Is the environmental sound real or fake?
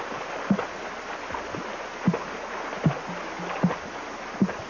real